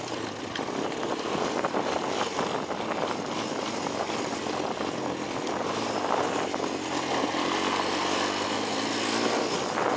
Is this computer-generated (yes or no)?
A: no